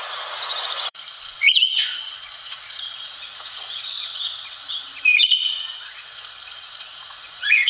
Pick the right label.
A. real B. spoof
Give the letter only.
B